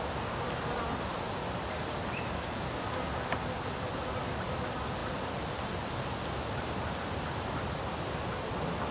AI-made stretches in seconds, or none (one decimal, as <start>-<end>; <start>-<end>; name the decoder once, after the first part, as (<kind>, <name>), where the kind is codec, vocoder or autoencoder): none